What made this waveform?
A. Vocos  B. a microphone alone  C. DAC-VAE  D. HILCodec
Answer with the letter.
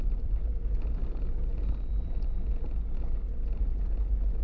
B